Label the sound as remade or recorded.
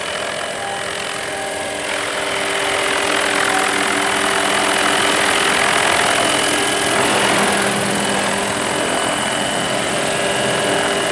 recorded